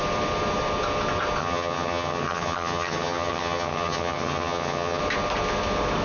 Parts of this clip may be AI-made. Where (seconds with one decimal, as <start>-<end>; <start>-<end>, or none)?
1.4-5.0